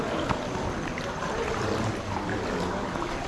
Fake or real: real